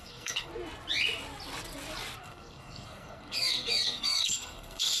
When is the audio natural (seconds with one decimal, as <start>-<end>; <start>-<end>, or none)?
0.5-2.2